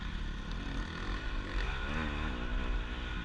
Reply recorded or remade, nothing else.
recorded